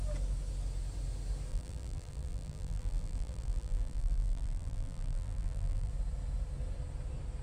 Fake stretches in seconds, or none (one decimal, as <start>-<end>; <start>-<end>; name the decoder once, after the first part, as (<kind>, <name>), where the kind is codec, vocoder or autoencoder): 1.5-5.9 (vocoder, BigVGAN v2)